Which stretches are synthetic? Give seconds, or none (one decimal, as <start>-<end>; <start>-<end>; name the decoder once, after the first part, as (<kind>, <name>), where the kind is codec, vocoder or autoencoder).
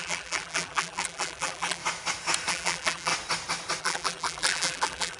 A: 0.0-1.8 (vocoder, BigVGAN v2); 2.5-3.1; 3.8-5.2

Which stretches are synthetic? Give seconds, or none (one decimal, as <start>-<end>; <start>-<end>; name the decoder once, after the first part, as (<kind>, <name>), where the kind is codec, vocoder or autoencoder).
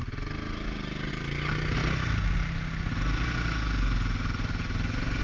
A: none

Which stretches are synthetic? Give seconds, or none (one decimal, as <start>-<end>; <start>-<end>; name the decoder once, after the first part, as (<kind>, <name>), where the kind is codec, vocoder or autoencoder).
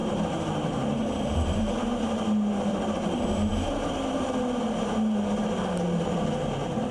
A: 0.0-1.7 (vocoder, BigVGAN v2)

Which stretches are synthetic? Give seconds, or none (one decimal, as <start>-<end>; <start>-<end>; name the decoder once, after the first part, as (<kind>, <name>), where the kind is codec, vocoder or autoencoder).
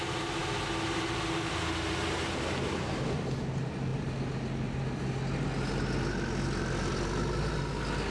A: none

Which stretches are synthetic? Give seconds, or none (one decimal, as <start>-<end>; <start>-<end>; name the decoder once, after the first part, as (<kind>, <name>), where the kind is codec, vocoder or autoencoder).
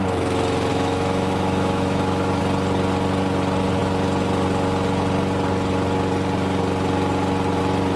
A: 0.7-2.4 (autoencoder, DAC-VAE)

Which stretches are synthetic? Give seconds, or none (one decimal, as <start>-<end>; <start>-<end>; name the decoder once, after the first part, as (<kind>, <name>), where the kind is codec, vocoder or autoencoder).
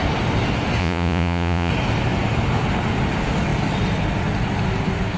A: 0.8-1.7 (vocoder, Vocos)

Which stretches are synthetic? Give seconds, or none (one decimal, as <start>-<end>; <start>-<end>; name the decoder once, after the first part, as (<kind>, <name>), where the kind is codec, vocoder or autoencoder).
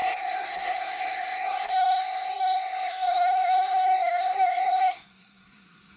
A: 0.0-6.0 (codec, SNAC)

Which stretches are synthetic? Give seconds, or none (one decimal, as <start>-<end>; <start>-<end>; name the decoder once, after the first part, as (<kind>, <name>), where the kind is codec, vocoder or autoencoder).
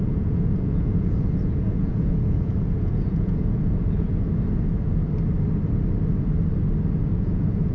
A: 0.0-4.3 (vocoder, Vocos); 7.0-7.7